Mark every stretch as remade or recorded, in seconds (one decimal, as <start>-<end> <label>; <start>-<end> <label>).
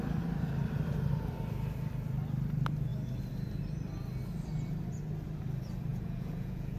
0.0-5.9 recorded; 5.9-6.8 remade